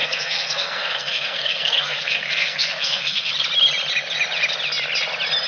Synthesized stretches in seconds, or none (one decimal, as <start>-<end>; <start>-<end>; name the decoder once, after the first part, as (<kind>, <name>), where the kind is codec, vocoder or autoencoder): 0.0-3.3 (codec, SNAC)